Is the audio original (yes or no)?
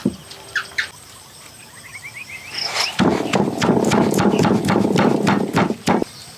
yes